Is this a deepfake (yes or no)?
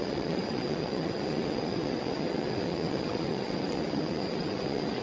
yes